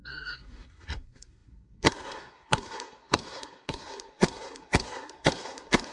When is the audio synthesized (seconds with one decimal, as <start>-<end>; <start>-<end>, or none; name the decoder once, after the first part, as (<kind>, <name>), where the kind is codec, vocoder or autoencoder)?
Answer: 0.0-5.9 (codec, SNAC)